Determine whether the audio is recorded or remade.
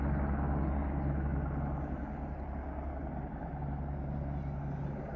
recorded